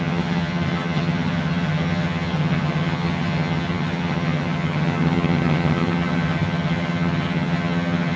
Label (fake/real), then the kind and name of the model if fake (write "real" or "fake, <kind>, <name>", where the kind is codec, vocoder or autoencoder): fake, vocoder, HiFi-GAN